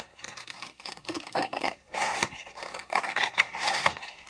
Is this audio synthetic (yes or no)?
yes